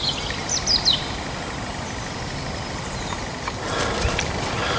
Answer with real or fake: real